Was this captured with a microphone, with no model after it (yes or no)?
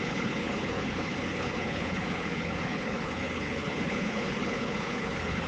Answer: no